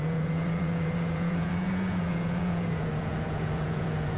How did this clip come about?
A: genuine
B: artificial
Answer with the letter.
B